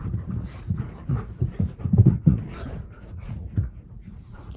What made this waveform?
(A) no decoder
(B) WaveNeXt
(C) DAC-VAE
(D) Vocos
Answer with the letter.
D